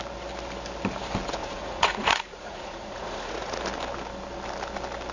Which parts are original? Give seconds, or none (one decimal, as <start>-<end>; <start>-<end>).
0.0-1.4; 3.6-5.1